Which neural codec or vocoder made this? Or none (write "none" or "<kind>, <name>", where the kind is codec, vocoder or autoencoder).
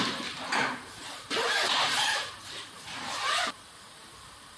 vocoder, BigVGAN v2